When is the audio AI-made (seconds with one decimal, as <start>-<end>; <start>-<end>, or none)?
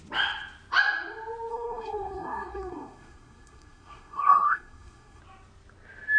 1.5-5.2